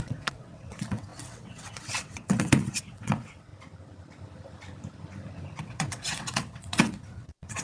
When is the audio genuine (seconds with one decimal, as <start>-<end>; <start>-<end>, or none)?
3.5-5.6